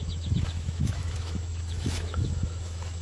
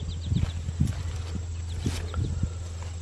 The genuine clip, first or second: second